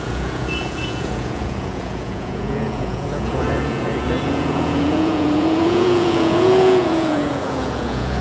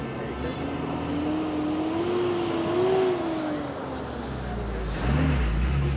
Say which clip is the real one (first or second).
second